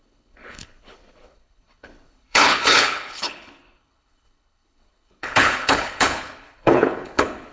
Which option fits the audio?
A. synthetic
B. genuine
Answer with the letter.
A